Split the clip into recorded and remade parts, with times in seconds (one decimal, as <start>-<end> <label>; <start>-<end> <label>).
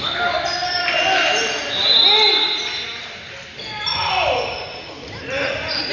0.0-5.9 recorded